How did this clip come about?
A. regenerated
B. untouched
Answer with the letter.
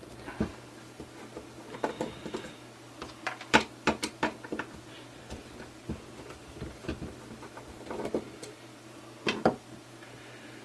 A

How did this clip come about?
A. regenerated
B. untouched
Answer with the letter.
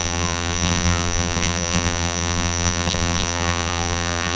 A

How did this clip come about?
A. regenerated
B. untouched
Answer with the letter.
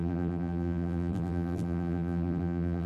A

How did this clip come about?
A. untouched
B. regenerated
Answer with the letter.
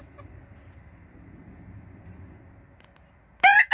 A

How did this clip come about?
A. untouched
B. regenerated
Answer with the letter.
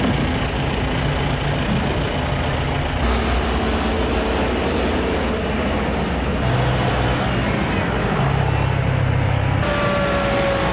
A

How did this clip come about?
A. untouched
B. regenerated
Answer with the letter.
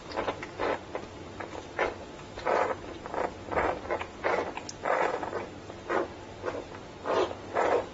A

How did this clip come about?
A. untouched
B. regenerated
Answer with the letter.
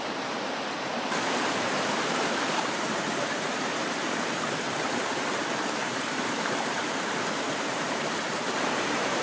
B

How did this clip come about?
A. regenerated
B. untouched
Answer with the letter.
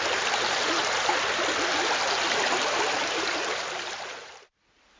B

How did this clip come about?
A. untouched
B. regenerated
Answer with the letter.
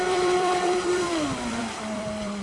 B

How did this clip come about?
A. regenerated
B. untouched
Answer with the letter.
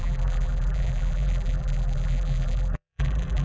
A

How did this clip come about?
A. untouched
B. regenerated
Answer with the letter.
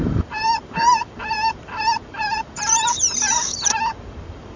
B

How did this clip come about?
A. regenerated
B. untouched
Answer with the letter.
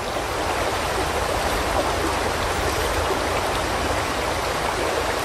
A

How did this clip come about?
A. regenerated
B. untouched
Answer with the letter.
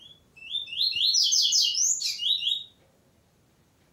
A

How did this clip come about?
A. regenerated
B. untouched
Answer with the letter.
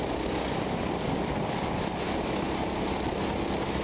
B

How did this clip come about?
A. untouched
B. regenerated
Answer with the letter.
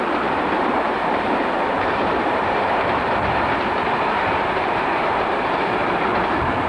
B